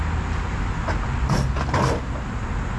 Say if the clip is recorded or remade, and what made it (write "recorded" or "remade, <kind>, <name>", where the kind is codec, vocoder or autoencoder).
recorded